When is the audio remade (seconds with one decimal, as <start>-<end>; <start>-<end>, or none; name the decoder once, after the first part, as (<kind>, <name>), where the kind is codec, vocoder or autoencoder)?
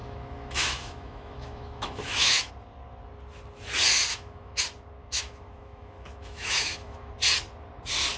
0.0-2.5 (autoencoder, DAC-VAE); 4.1-4.6; 5.0-7.1